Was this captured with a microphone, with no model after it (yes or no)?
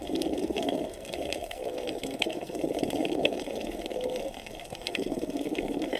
no